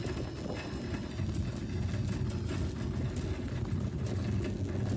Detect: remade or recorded recorded